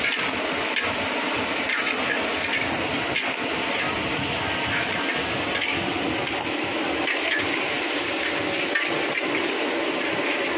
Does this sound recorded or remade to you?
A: recorded